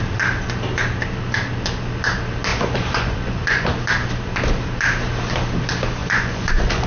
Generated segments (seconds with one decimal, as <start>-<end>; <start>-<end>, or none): 2.5-3.7; 6.0-6.9